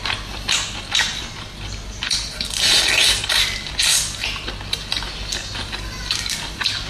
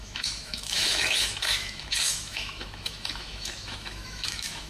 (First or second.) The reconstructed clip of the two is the second